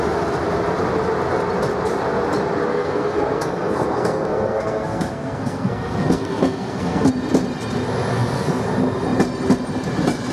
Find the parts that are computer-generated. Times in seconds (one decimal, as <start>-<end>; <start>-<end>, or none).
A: 2.7-7.1; 8.1-8.6

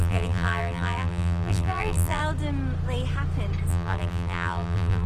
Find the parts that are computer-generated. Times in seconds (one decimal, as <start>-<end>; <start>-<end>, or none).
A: 0.0-2.2; 3.7-5.1

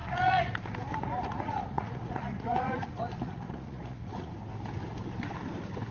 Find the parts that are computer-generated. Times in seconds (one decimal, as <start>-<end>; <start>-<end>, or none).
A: 0.0-0.5; 0.9-4.3

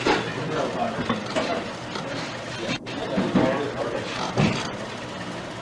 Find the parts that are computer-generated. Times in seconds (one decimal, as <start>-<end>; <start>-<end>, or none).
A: none